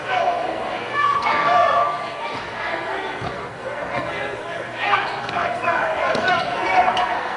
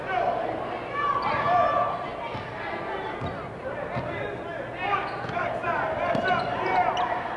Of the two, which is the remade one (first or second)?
first